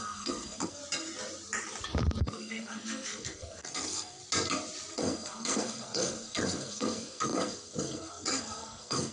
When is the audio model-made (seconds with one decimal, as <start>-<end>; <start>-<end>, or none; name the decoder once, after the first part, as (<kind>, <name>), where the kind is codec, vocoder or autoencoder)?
0.0-0.8 (codec, SNAC); 2.2-4.2; 4.9-9.1